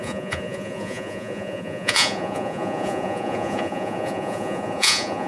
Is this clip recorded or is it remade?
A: remade